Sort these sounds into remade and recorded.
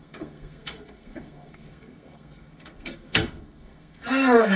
remade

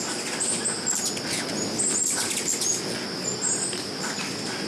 recorded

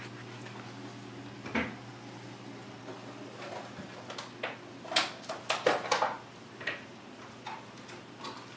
recorded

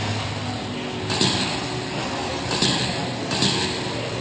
recorded